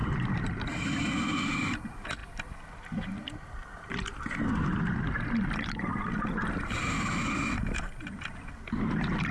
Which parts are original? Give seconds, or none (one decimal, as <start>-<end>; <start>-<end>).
0.0-9.3